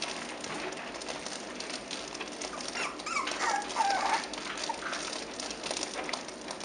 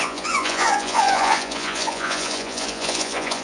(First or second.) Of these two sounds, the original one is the first